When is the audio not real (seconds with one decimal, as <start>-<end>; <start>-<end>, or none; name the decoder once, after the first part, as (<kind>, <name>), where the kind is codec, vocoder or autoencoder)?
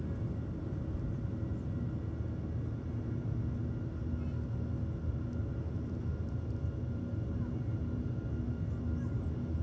none